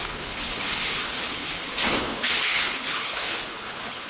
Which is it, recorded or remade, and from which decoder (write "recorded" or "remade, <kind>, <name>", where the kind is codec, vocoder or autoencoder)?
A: remade, codec, HILCodec